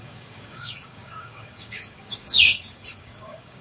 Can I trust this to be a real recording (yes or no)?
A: no